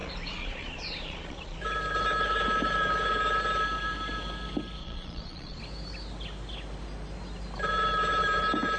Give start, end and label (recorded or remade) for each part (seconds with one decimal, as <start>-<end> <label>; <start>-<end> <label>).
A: 0.0-1.6 remade; 1.6-4.8 recorded; 4.8-5.6 remade; 5.6-8.8 recorded